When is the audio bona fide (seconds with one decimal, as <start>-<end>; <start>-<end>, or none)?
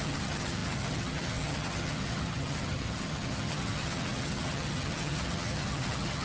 none